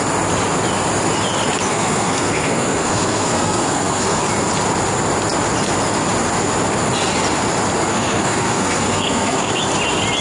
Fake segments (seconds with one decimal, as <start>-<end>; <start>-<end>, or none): 1.7-4.2; 7.9-9.5